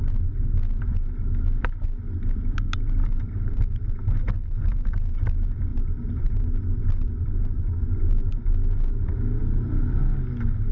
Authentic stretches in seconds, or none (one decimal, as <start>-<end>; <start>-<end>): 0.0-3.0; 5.3-5.7; 8.3-10.7